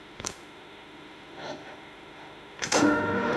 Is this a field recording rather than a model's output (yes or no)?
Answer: no